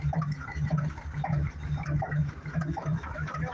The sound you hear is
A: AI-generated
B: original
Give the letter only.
A